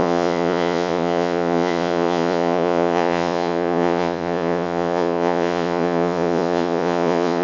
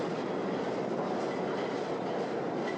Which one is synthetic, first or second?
first